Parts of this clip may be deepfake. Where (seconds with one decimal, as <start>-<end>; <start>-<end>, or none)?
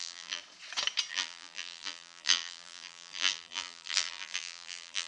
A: 0.0-0.4; 1.1-5.1